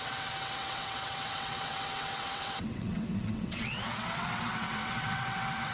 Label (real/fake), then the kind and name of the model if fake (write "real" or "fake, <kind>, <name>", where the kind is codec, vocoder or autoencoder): fake, vocoder, WaveNeXt